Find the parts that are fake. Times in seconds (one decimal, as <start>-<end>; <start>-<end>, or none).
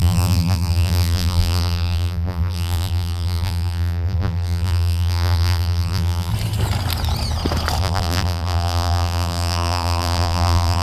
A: 0.0-6.3; 7.8-10.8